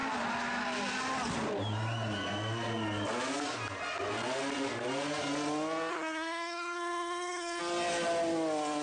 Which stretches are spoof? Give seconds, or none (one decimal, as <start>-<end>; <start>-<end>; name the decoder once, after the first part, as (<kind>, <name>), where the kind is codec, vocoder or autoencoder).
5.9-7.6 (codec, SNAC)